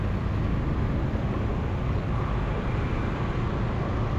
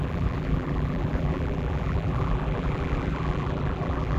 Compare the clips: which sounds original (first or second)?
first